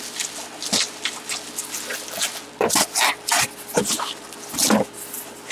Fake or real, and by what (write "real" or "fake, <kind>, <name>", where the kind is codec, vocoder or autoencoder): real